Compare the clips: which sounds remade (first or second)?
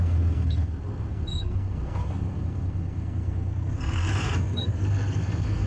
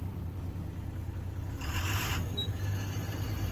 first